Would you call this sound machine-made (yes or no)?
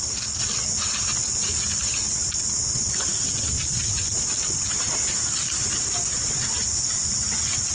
no